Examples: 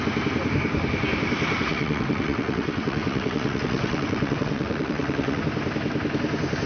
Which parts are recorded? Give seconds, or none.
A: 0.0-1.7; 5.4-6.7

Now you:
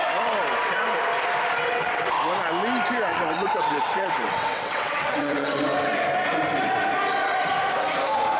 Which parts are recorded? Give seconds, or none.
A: 0.0-1.6; 2.1-3.1; 5.6-8.4

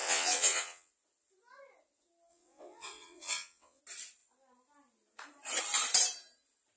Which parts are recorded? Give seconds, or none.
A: 0.9-2.3; 3.8-6.8

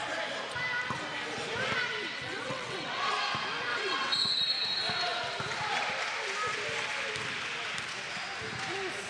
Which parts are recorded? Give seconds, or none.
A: 0.0-2.0; 3.1-3.7; 4.4-9.1

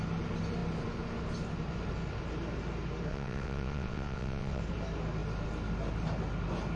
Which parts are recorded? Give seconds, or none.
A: 0.0-3.1; 4.6-6.8